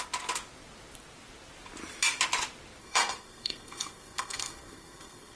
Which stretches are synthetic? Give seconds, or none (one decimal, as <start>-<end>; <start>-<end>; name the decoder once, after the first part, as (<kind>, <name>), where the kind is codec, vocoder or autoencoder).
2.8-5.4 (codec, SNAC)